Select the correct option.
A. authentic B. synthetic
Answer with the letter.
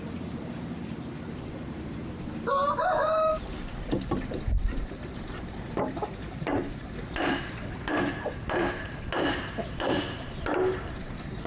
B